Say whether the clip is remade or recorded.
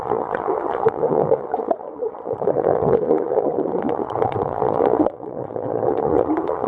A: remade